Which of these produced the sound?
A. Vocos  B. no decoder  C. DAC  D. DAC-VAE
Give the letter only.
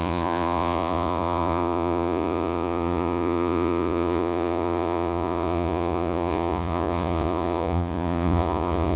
A